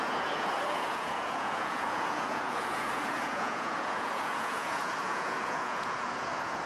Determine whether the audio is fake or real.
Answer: fake